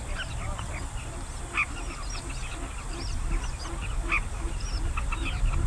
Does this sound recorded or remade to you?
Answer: recorded